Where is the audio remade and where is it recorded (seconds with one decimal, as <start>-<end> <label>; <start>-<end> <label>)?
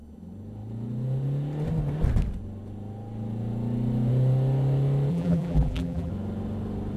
0.0-5.1 recorded; 5.1-6.1 remade; 6.1-7.0 recorded